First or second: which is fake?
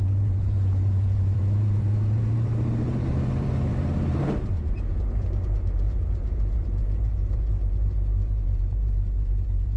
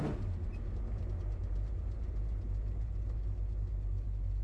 first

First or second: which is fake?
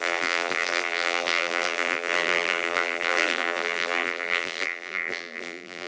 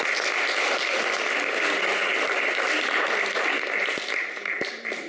first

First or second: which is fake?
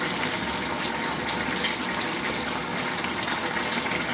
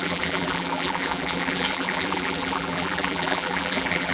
second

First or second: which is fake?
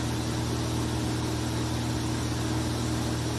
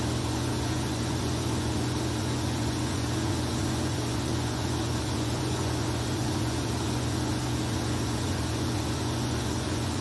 second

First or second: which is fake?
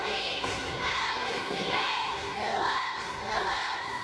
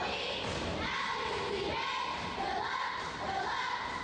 first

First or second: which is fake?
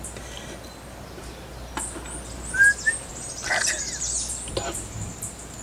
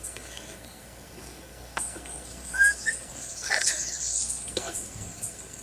second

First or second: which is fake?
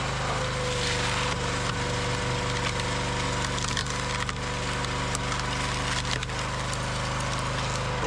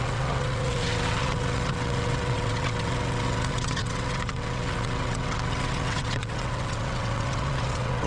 second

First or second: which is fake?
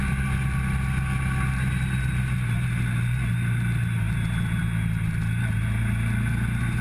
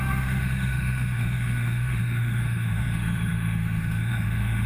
second